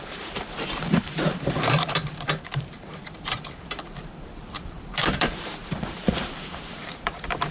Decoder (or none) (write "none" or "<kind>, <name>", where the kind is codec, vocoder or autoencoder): vocoder, BigVGAN v2